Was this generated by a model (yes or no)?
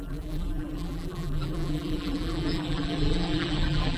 yes